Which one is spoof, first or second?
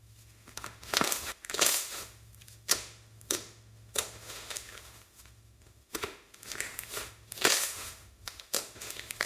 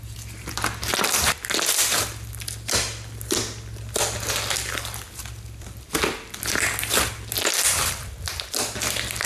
first